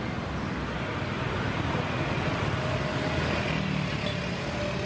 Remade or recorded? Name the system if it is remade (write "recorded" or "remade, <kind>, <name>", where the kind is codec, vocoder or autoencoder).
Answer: recorded